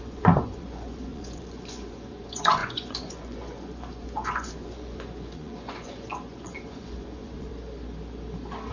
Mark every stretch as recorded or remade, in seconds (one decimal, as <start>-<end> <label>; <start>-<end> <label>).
0.0-7.5 remade; 7.5-8.7 recorded